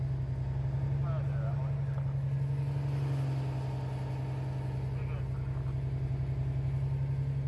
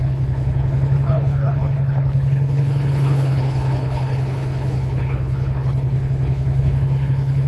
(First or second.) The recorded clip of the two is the first